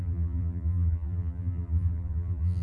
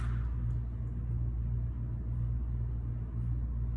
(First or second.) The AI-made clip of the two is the first